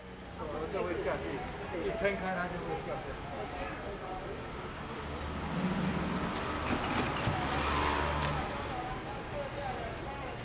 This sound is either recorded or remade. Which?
recorded